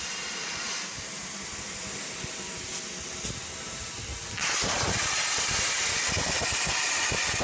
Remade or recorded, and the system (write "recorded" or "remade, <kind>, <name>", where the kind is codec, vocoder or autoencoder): recorded